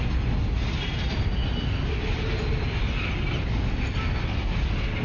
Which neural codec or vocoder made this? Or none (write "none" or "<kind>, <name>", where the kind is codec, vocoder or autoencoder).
none